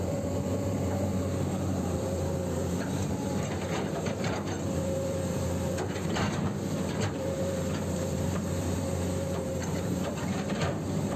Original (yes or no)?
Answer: no